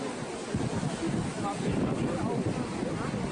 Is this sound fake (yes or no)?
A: no